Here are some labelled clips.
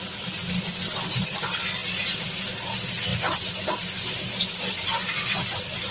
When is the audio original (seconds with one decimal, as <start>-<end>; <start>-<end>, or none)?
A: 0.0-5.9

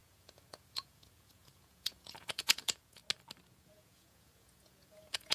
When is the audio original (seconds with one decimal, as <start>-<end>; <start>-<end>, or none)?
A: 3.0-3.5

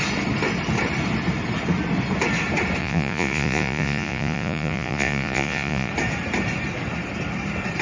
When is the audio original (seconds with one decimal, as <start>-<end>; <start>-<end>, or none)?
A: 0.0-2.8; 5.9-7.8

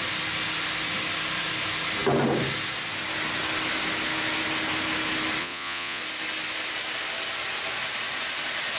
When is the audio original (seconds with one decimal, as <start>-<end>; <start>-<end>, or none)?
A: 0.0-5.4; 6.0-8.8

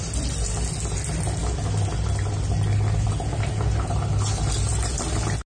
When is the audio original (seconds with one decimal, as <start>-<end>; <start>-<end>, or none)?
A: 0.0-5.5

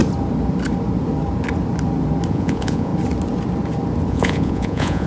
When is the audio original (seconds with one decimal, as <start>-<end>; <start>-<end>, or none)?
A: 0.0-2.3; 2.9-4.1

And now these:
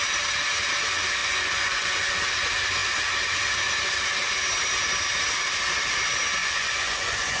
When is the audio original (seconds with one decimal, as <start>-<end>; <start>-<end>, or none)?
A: 0.0-1.2; 2.1-6.4